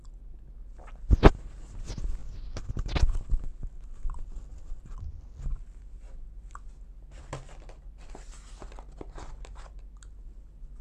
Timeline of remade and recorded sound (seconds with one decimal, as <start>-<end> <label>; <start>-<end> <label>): 0.0-10.8 recorded